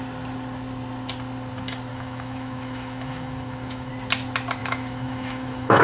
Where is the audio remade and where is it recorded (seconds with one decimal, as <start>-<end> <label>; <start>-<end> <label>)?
0.0-1.9 recorded; 1.9-3.9 remade; 3.9-4.6 recorded; 4.6-5.8 remade